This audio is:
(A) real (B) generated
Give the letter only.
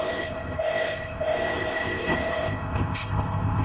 B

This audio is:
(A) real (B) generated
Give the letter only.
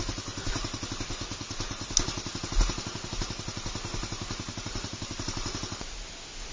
A